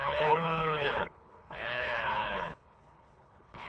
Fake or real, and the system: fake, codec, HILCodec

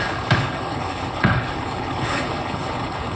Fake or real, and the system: fake, codec, HILCodec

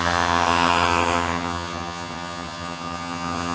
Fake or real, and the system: fake, vocoder, HiFi-GAN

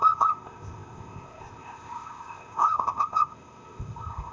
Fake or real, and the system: fake, codec, ZipCodec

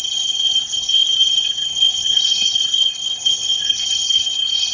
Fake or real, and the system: fake, codec, HILCodec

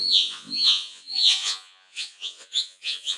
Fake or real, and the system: fake, vocoder, Vocos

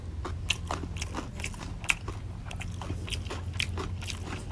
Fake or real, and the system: real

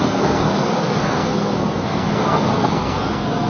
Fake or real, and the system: fake, codec, SNAC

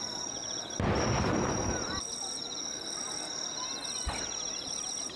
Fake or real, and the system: real